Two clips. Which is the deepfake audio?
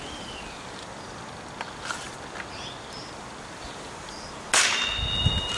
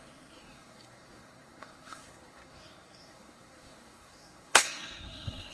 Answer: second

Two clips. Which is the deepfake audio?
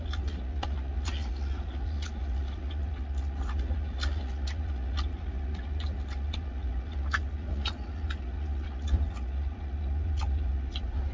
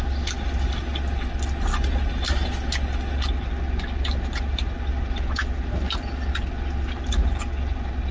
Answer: first